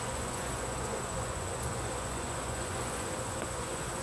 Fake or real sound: fake